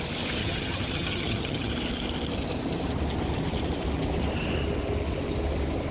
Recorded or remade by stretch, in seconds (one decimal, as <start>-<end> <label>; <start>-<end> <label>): 0.0-0.4 recorded; 0.4-1.7 remade; 1.7-5.9 recorded